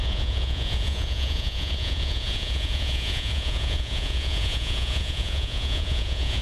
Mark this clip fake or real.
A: fake